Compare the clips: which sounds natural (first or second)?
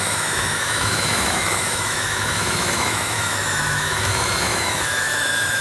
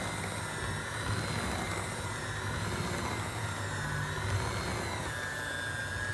second